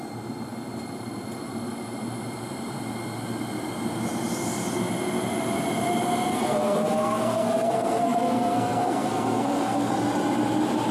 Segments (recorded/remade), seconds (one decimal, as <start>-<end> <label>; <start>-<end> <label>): 0.0-6.3 recorded; 6.3-9.9 remade; 9.9-10.9 recorded